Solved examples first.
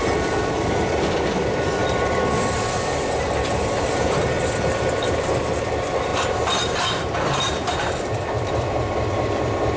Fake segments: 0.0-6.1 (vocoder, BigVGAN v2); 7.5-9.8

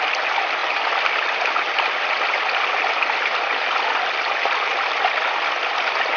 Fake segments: 0.6-1.3 (vocoder, BigVGAN v2)

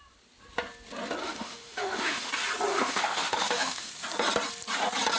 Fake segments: 1.2-2.3 (autoencoder, DAC-VAE); 2.7-3.9

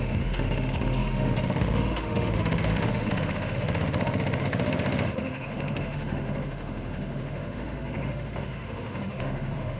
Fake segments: 0.0-9.8 (autoencoder, DAC-VAE)

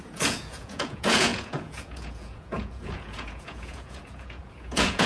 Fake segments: 0.0-5.1 (vocoder, Vocos)